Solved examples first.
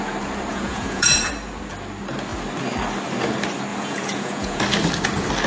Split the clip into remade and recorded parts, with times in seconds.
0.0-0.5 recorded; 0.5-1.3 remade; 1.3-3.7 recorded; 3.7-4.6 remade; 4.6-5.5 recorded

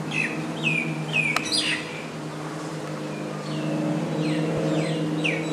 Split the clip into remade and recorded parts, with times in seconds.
0.0-5.5 recorded

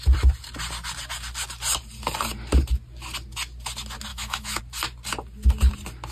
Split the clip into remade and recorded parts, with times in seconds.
0.0-4.1 recorded; 4.1-4.6 remade; 4.6-6.1 recorded

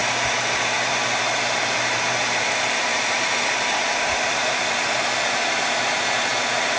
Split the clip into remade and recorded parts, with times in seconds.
0.0-6.8 remade

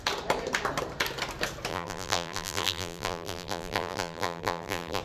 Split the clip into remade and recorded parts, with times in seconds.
0.0-1.7 recorded; 1.7-5.0 remade

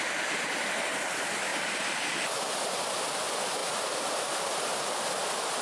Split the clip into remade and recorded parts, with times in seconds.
0.0-5.6 recorded

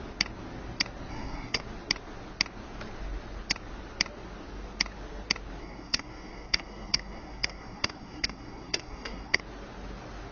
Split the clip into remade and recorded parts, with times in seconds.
0.0-1.1 recorded; 1.1-1.6 remade; 1.6-5.6 recorded; 5.6-9.4 remade; 9.4-10.3 recorded

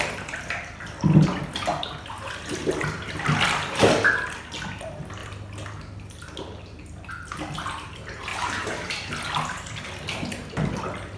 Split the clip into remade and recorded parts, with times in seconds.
0.0-11.2 recorded